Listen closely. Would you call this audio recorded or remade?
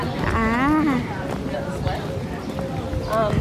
recorded